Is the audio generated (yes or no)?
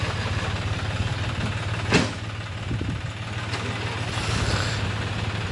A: no